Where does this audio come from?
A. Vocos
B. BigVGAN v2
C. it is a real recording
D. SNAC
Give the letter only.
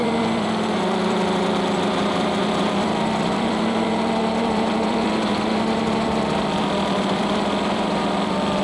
B